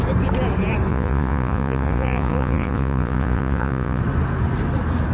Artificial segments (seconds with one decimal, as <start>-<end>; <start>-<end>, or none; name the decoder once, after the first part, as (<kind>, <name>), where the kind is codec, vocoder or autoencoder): 0.9-4.0 (vocoder, Vocos)